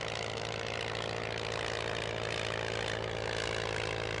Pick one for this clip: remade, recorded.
recorded